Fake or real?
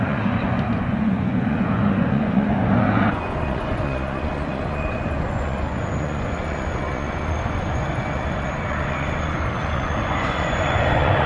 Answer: fake